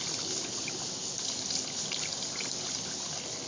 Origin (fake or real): real